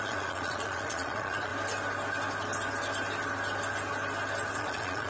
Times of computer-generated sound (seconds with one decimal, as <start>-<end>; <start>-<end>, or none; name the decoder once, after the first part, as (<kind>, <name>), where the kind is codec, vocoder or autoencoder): 0.0-1.5 (vocoder, Vocos); 4.6-5.1

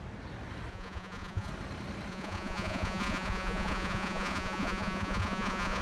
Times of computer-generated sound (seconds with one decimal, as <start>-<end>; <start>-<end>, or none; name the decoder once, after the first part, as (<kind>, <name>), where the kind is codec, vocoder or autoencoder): 0.7-1.5 (vocoder, Vocos); 2.1-5.8

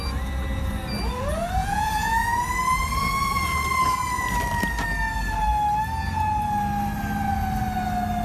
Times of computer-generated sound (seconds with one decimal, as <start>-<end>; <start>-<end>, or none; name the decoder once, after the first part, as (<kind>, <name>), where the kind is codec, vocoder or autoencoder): 1.6-2.4 (vocoder, Vocos)

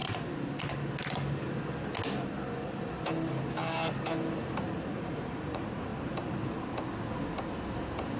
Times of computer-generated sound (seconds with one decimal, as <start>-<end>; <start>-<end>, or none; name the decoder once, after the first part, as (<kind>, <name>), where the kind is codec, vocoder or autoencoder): 4.9-5.9 (vocoder, Vocos)

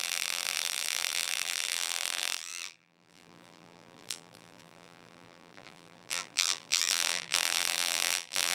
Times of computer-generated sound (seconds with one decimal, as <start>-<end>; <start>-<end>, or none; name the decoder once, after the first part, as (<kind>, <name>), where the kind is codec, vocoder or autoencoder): 0.0-8.5 (vocoder, BigVGAN v2)

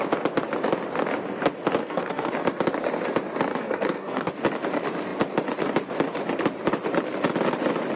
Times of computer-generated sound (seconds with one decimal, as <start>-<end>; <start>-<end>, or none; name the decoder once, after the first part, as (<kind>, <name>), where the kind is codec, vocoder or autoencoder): 1.8-2.3 (codec, SNAC); 3.5-4.3

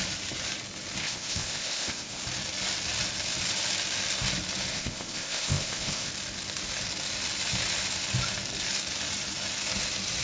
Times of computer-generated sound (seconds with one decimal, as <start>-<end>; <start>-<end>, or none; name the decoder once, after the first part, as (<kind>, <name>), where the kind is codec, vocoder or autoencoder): 1.0-2.2 (codec, ZipCodec); 4.7-6.1

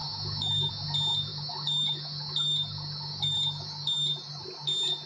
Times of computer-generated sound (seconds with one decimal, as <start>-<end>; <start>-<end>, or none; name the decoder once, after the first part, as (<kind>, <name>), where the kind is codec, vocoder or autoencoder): 0.0-0.7 (autoencoder, DAC-VAE); 1.3-4.4